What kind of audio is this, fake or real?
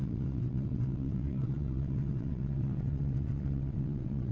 fake